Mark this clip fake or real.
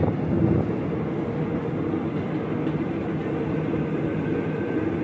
real